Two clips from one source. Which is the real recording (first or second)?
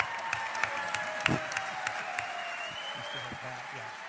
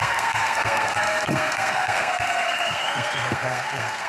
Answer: first